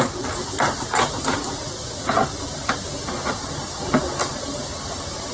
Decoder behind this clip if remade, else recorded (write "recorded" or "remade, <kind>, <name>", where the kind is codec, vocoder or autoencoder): recorded